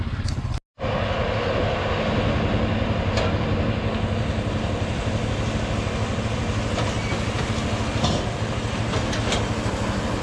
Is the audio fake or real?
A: real